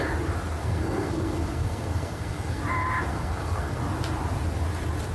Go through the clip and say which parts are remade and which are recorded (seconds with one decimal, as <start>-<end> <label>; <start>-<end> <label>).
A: 0.0-0.6 recorded; 0.6-2.6 remade; 2.6-3.1 recorded; 3.1-3.8 remade; 3.8-5.1 recorded